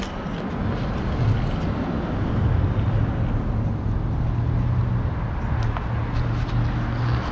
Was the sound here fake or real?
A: real